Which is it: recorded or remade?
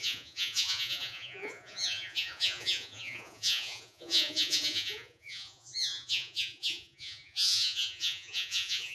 remade